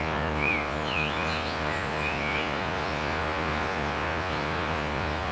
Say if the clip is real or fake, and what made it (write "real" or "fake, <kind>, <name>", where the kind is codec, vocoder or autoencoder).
fake, vocoder, Vocos